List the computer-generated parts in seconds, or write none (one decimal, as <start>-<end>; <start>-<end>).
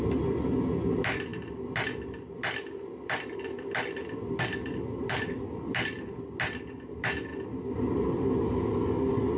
none